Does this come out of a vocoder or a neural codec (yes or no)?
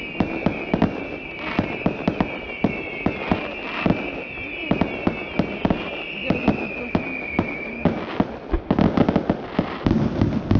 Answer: no